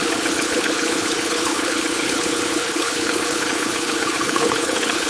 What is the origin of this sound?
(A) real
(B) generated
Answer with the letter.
B